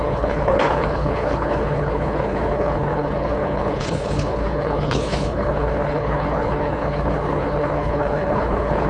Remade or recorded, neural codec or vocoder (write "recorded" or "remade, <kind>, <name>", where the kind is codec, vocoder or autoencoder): remade, codec, HILCodec